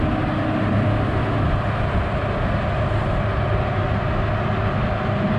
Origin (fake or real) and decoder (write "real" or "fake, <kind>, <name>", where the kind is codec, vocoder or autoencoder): real